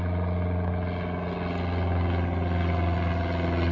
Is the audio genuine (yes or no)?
yes